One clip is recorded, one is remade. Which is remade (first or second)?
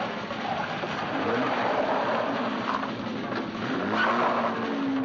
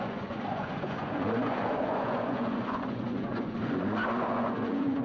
second